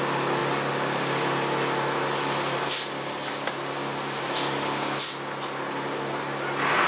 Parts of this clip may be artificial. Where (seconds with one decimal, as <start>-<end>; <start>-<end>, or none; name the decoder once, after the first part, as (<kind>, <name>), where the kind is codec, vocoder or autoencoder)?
none

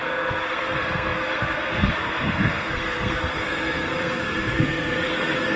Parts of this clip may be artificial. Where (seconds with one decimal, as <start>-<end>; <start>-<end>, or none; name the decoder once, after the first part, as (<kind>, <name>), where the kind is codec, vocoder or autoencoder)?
0.0-5.6 (codec, SNAC)

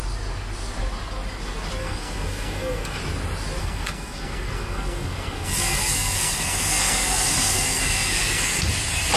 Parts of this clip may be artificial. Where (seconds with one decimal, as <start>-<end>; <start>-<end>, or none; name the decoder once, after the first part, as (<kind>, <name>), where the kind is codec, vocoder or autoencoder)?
1.8-3.0 (codec, SNAC); 3.6-8.7

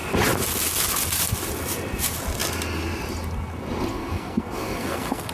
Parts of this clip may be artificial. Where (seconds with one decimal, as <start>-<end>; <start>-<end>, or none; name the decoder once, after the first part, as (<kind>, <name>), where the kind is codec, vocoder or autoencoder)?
3.9-5.3 (codec, SNAC)